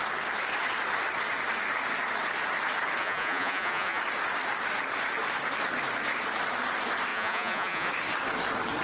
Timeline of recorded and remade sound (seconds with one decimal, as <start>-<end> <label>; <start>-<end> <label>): 0.0-3.0 recorded; 3.0-4.0 remade; 4.0-7.1 recorded; 7.1-7.9 remade; 7.9-8.8 recorded